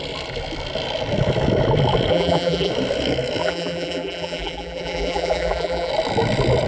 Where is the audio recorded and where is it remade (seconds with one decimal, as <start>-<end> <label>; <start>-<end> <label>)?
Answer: 0.0-2.1 recorded; 2.1-2.7 remade; 2.7-3.4 recorded; 3.4-5.9 remade; 5.9-6.7 recorded